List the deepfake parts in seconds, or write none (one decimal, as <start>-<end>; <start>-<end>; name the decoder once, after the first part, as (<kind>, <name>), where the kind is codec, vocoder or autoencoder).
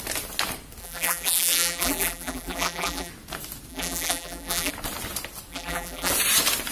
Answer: 0.8-3.1 (vocoder, BigVGAN v2); 3.7-4.7; 5.5-6.1